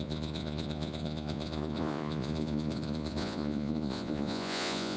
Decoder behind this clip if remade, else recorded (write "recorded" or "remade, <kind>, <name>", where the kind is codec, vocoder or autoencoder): remade, vocoder, Vocos